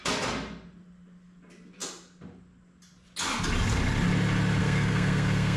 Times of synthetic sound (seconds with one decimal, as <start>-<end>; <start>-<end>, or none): 4.6-5.6